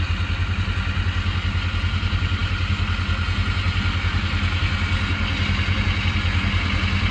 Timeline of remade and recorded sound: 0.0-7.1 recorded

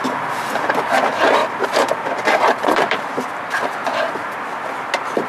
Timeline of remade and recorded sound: 0.0-1.4 recorded; 1.4-1.9 remade; 1.9-2.6 recorded; 2.6-3.1 remade; 3.1-5.3 recorded

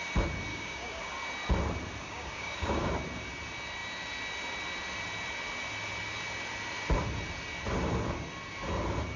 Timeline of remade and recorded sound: 0.0-0.5 recorded; 0.5-1.0 remade; 1.0-2.0 recorded; 2.0-2.9 remade; 2.9-9.2 recorded

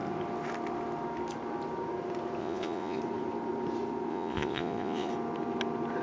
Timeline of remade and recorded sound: 0.0-2.4 recorded; 2.4-3.0 remade; 3.0-4.1 recorded; 4.1-5.1 remade; 5.1-6.0 recorded

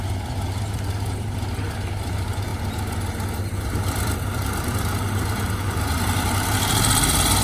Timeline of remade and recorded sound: 0.0-2.5 remade; 2.5-3.5 recorded; 3.5-7.4 remade

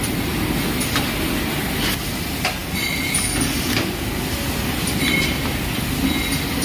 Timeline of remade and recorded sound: 0.0-6.6 recorded

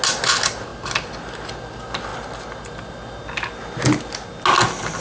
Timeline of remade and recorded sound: 0.0-5.0 recorded

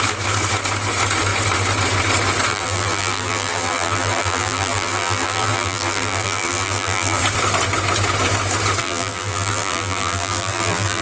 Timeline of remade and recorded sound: 0.0-2.5 recorded; 2.5-7.2 remade; 7.2-8.8 recorded; 8.8-11.0 remade